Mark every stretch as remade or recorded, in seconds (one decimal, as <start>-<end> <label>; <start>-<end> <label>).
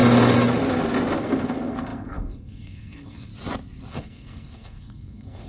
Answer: 0.0-1.2 recorded; 1.2-3.3 remade; 3.3-3.9 recorded; 3.9-5.5 remade